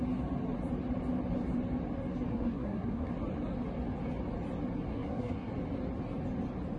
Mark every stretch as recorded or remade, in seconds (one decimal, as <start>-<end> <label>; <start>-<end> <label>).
0.0-2.3 recorded; 2.3-3.1 remade; 3.1-4.9 recorded; 4.9-5.5 remade; 5.5-6.8 recorded